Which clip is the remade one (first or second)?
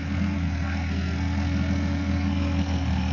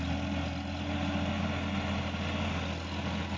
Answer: first